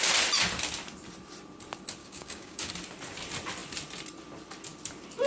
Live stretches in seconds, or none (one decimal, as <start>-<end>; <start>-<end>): 0.0-2.0; 2.7-5.3

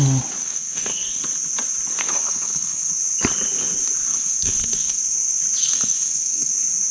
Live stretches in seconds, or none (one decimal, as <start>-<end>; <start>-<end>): 0.0-0.4; 1.2-2.0; 2.9-4.1; 5.0-5.6; 6.5-6.9

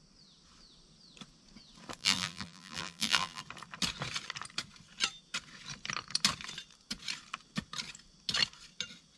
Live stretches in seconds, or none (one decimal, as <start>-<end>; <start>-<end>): 0.0-2.0; 3.4-9.2

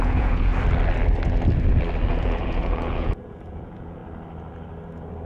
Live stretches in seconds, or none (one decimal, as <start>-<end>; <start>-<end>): 0.5-2.1; 4.0-5.3

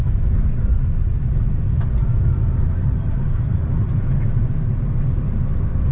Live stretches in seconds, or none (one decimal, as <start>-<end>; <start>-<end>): 0.0-2.0; 5.5-5.9

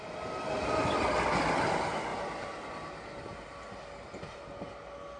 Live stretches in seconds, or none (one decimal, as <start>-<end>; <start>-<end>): 0.0-5.2

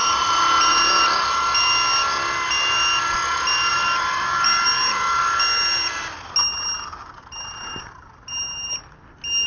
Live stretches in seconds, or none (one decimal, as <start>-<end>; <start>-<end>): 0.0-3.7; 4.7-9.5